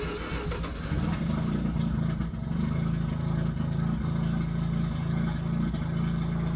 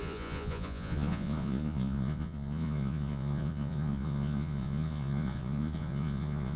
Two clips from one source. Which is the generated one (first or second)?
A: second